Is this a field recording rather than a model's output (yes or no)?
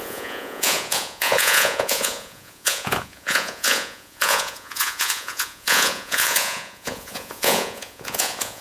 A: no